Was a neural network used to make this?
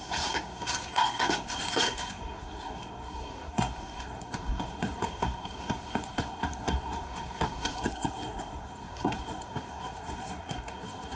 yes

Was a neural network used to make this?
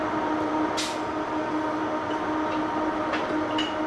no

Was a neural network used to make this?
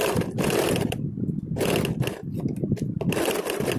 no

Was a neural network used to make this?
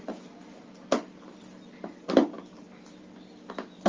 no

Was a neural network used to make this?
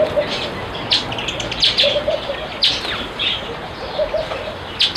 no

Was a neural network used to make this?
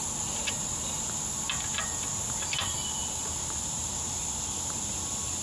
no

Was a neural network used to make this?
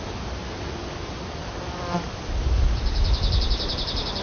no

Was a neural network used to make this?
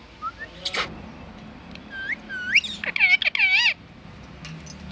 no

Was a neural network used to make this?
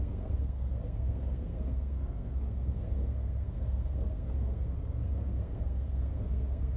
yes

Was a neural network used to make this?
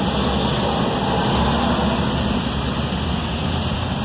no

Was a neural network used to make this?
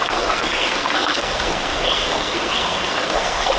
yes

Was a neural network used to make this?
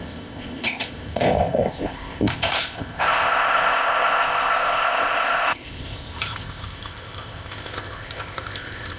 yes